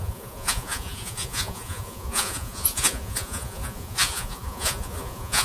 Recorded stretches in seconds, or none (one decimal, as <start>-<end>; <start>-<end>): none